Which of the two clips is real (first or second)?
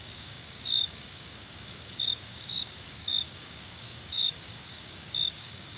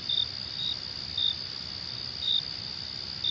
second